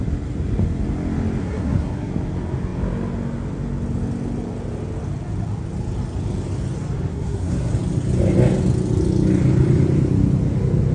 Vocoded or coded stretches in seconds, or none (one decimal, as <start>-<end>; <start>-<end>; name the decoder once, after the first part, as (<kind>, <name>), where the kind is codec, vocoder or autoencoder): 1.4-2.1 (codec, SNAC); 7.1-7.7